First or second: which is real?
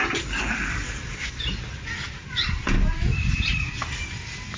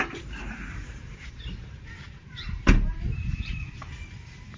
first